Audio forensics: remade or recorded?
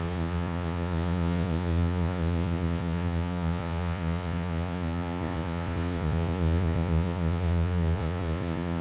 remade